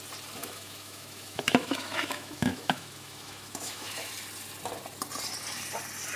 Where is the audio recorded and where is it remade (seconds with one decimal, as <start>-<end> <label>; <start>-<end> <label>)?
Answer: 0.0-0.4 recorded; 0.4-4.1 remade; 4.1-6.2 recorded